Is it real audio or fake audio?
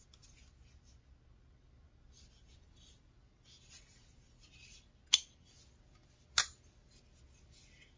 real